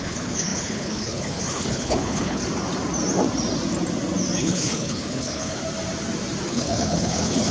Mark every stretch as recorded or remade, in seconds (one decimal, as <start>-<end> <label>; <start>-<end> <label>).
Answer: 0.0-2.4 remade; 2.4-4.4 recorded; 4.4-5.6 remade; 5.6-6.5 recorded; 6.5-7.5 remade